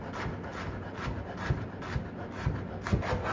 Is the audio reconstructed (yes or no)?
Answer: no